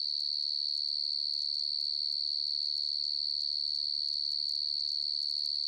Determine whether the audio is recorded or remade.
recorded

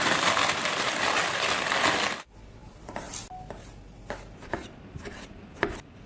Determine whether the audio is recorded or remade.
recorded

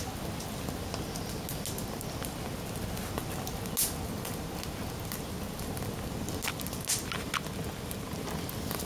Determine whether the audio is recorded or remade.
recorded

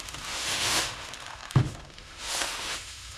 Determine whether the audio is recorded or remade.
remade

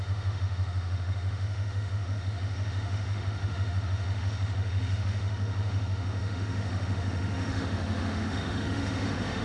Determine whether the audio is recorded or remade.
remade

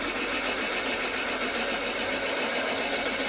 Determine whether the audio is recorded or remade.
recorded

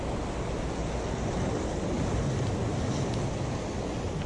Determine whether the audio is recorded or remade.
recorded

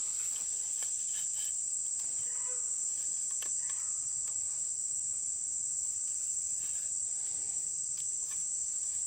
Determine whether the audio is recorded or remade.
recorded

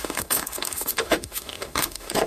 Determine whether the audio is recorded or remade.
remade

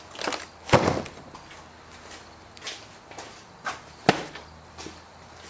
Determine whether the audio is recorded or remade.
recorded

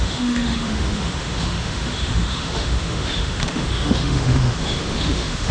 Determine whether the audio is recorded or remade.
remade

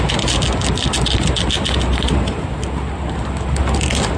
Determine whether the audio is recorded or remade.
recorded